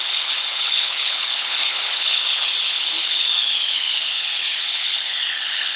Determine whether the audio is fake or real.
fake